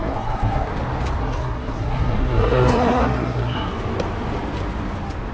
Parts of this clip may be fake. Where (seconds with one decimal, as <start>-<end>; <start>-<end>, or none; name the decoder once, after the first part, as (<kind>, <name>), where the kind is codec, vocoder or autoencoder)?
0.0-0.7 (codec, SNAC); 1.2-3.7